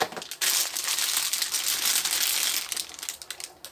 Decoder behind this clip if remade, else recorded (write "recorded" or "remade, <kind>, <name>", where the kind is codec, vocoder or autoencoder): recorded